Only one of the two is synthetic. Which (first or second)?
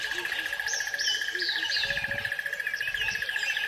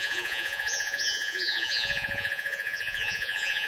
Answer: second